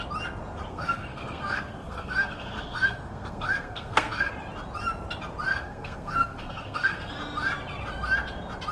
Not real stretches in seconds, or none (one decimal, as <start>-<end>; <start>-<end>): 0.7-4.3; 5.5-7.1